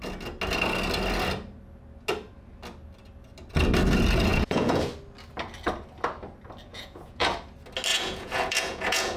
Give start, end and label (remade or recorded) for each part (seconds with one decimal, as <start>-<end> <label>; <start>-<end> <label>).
0.0-4.3 recorded; 4.3-4.9 remade; 4.9-6.7 recorded; 6.7-7.3 remade; 7.3-7.9 recorded; 7.9-9.2 remade